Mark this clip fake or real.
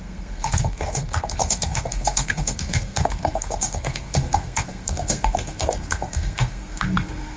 fake